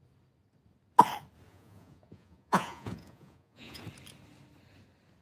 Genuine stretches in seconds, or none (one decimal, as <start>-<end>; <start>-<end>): 0.0-1.5; 3.8-5.2